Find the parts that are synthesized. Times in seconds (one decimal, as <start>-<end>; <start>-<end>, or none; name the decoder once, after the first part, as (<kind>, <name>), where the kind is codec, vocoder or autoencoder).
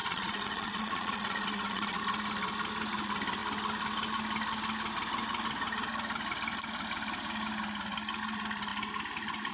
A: 0.0-2.0 (vocoder, Vocos)